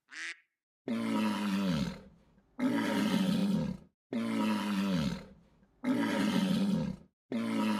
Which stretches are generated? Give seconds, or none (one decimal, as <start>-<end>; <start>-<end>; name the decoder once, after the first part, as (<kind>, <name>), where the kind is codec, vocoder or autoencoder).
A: none